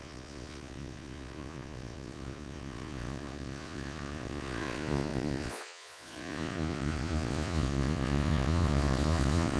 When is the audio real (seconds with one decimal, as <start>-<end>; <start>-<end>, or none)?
none